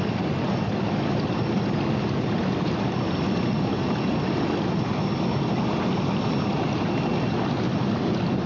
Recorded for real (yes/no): yes